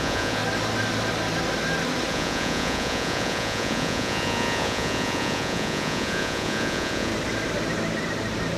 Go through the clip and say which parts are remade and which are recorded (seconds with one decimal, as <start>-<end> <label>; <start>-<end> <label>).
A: 0.0-0.4 remade; 0.4-2.1 recorded; 2.1-7.1 remade; 7.1-8.6 recorded